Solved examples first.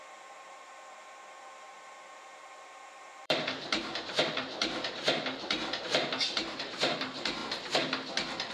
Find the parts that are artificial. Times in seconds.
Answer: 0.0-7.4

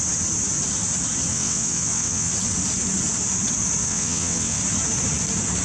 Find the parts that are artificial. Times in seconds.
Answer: 1.3-2.3; 3.8-4.6

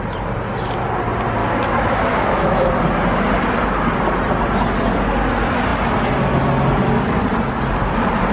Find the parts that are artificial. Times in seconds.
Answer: 1.4-2.7

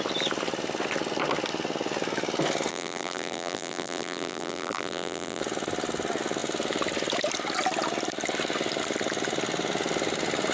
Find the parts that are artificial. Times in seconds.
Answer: 2.7-5.4

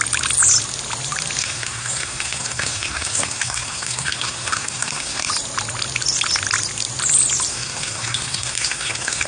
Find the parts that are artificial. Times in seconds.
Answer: 1.4-5.3; 7.5-9.3